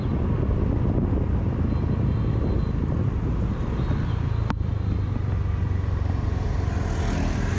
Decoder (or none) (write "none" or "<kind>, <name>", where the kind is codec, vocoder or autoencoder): none